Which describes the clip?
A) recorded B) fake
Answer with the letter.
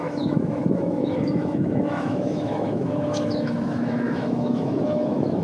B